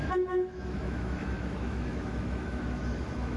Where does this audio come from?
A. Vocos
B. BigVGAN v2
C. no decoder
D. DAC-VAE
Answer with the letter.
D